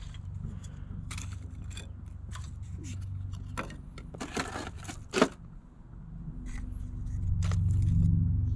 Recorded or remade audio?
recorded